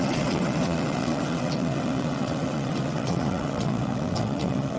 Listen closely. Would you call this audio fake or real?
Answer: fake